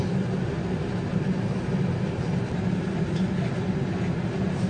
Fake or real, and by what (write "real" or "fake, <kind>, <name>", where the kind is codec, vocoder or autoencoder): real